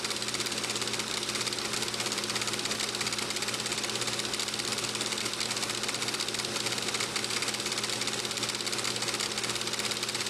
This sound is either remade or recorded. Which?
recorded